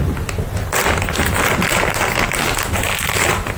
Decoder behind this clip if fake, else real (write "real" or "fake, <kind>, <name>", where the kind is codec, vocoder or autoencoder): real